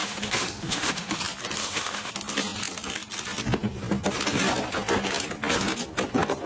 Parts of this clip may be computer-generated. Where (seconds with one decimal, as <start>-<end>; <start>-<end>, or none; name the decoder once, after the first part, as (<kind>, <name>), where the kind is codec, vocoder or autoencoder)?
0.0-1.2 (autoencoder, DAC-VAE); 1.6-2.1